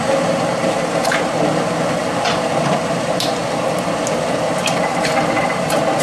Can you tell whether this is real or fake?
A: fake